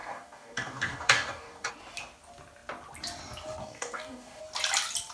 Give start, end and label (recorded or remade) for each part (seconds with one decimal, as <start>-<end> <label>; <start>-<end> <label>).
0.0-1.7 remade; 1.7-3.6 recorded; 3.6-4.4 remade; 4.4-5.1 recorded